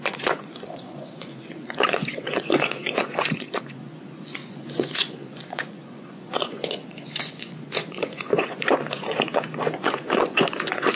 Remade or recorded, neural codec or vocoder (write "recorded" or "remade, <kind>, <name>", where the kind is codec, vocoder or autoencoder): remade, vocoder, Vocos